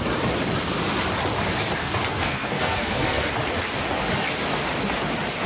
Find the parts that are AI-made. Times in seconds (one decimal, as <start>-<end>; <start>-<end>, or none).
1.8-3.3